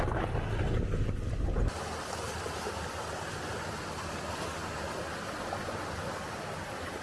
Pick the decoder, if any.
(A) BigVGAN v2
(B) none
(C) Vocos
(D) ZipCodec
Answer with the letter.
B